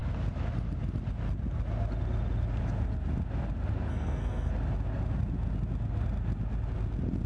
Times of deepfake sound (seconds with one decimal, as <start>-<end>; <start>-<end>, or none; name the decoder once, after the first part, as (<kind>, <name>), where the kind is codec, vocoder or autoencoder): 3.9-4.5 (codec, SNAC)